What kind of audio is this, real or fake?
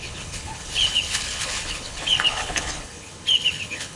fake